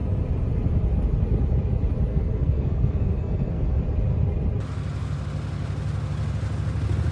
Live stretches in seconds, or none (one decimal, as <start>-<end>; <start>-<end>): 0.0-2.1; 3.8-7.1